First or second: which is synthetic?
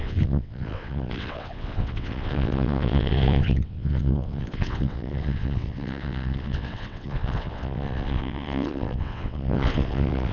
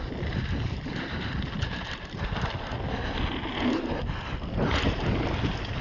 first